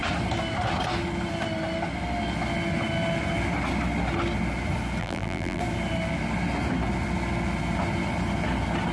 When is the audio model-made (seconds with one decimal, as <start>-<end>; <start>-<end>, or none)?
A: 5.0-5.6